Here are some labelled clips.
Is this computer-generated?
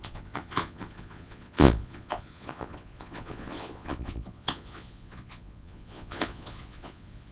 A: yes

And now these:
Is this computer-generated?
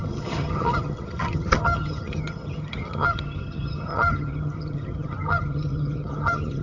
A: yes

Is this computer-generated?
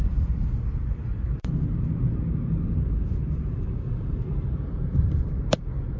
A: yes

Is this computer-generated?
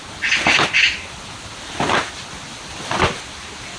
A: no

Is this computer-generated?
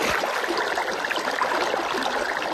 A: no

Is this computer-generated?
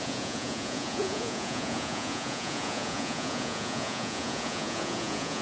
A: yes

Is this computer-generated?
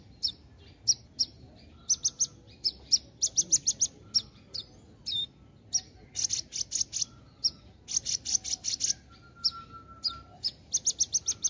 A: no